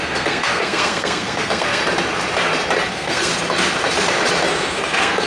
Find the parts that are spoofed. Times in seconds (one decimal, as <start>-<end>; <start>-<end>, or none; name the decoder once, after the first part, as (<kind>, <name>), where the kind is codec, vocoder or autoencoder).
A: 0.0-1.8 (codec, SNAC); 2.9-3.3; 4.5-5.3